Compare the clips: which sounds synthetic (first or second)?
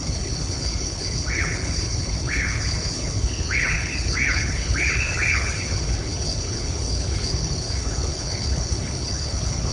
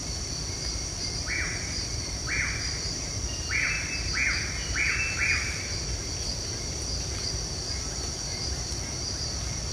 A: first